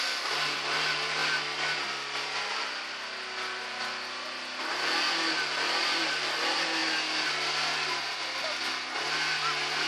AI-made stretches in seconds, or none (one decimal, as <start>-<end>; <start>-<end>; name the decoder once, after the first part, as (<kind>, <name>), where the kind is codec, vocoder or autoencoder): none